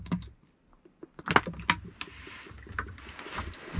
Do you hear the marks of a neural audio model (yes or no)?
no